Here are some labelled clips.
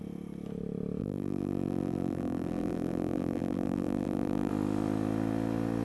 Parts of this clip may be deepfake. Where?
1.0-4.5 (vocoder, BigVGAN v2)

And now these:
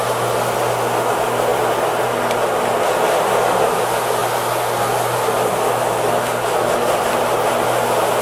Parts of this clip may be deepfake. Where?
none

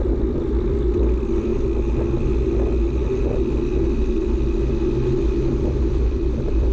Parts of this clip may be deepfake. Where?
0.0-1.5 (vocoder, BigVGAN v2); 5.5-6.7

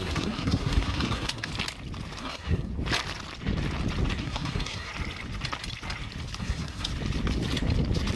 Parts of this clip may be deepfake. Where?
0.0-1.5 (codec, SNAC); 2.2-2.7; 4.2-4.9; 6.4-6.9

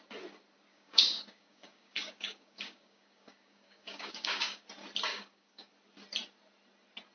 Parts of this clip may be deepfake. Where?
0.7-4.6 (codec, DAC); 5.1-5.7

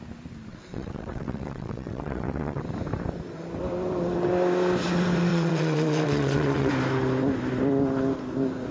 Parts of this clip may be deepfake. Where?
0.5-2.6 (vocoder, WaveNeXt); 5.3-6.7

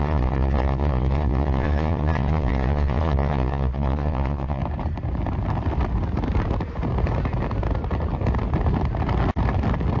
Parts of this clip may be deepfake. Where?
0.0-4.6 (vocoder, Vocos)

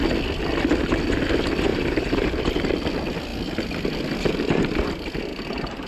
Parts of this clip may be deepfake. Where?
1.7-2.4 (vocoder, BigVGAN v2); 5.3-5.9